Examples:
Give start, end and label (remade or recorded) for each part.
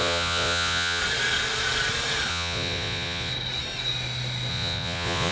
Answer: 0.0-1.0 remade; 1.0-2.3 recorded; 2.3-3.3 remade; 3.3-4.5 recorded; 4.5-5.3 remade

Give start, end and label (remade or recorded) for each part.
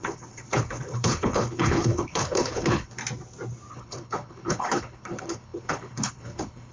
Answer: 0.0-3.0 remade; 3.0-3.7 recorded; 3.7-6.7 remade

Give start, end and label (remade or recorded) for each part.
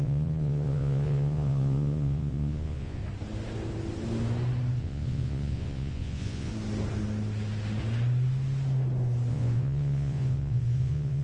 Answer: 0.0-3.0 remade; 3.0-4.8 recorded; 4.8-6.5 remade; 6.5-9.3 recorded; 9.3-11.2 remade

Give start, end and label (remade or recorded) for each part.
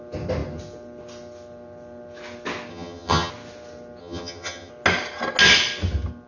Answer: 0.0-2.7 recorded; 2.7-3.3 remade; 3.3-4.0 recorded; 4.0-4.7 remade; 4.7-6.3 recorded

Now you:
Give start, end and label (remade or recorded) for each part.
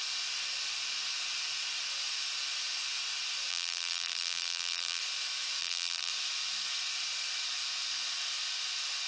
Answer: 0.0-3.5 recorded; 3.5-5.0 remade; 5.0-5.6 recorded; 5.6-6.1 remade; 6.1-9.1 recorded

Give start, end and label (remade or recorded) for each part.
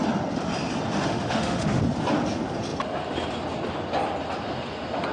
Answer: 0.0-1.1 recorded; 1.1-1.8 remade; 1.8-5.1 recorded